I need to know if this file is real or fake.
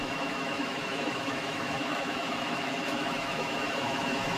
fake